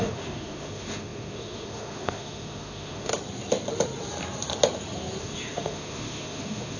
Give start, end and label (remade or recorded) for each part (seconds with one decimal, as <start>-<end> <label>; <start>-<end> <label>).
0.0-3.1 remade; 3.1-5.2 recorded; 5.2-6.8 remade